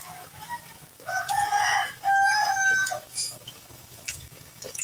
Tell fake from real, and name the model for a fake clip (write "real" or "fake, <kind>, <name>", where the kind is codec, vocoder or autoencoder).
fake, autoencoder, DAC-VAE